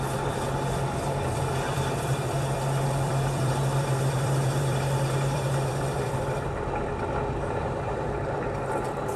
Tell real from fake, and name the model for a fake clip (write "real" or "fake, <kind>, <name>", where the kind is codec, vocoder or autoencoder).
fake, vocoder, BigVGAN v2